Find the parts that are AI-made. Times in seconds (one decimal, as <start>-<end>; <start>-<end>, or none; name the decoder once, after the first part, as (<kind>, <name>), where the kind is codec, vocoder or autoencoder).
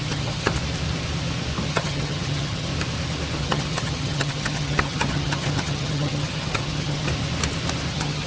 0.0-0.5 (vocoder, HiFi-GAN); 1.7-2.7; 3.4-7.1; 7.9-8.3